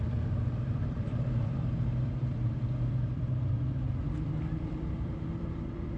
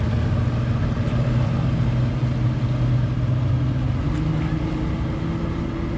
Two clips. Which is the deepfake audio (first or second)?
first